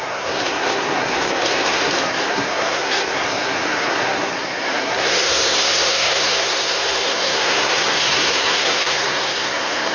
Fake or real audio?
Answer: fake